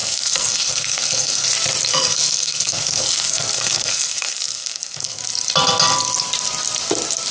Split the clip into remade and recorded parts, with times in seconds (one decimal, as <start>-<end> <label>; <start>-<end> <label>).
0.0-1.5 remade; 1.5-1.9 recorded; 1.9-5.2 remade; 5.2-7.3 recorded